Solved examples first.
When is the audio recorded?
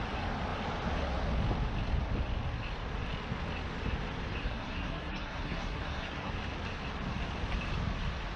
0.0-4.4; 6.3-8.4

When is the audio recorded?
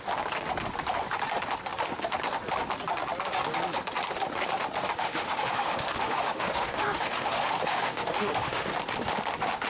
0.0-5.0; 8.7-9.7